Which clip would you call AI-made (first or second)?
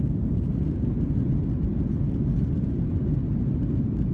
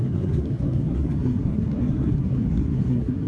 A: second